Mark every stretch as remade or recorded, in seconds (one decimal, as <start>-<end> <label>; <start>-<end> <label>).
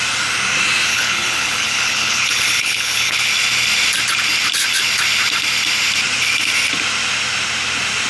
0.0-0.9 recorded; 0.9-3.3 remade; 3.3-8.1 recorded